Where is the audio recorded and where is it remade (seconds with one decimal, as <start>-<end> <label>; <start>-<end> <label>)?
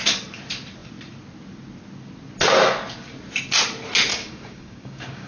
0.0-4.1 recorded; 4.1-5.3 remade